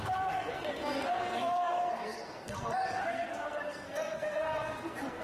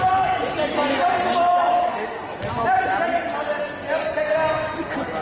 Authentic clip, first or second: second